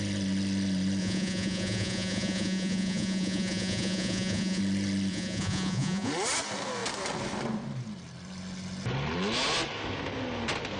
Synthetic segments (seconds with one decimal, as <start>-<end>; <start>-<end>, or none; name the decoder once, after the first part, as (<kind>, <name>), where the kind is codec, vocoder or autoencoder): 1.0-4.6 (vocoder, Vocos); 5.1-6.1